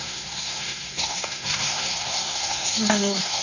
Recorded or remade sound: remade